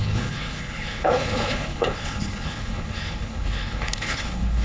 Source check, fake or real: fake